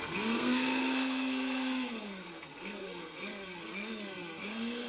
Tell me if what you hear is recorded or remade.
remade